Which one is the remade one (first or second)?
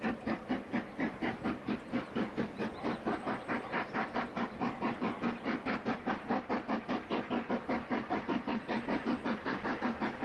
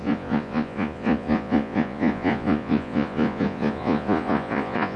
second